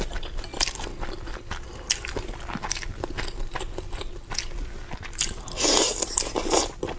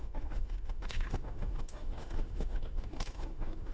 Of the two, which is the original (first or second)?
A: first